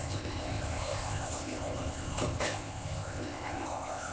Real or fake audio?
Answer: fake